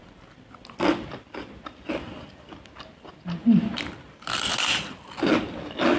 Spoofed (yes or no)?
no